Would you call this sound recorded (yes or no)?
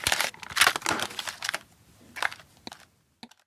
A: yes